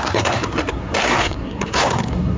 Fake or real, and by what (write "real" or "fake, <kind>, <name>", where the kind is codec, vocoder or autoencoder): fake, codec, SNAC